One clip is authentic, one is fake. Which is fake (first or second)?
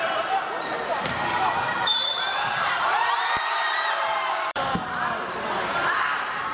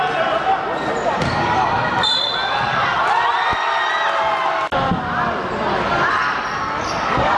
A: first